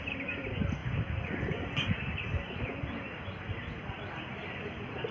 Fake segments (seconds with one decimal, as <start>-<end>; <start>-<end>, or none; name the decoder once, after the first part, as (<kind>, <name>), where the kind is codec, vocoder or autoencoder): 4.4-5.1 (vocoder, BigVGAN v2)